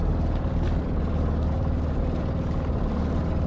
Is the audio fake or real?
real